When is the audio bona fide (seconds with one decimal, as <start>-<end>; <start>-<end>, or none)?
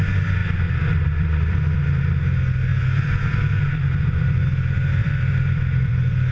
0.0-0.4; 2.2-2.7; 4.4-5.0